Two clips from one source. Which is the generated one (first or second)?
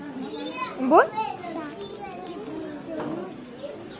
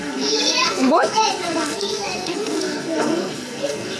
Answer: second